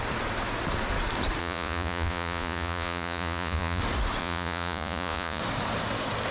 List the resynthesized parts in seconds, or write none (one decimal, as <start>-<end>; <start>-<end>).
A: 1.4-3.8; 4.2-5.4